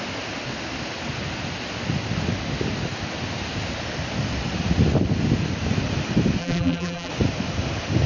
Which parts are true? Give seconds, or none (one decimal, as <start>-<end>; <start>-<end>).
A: 0.0-6.4; 7.1-8.1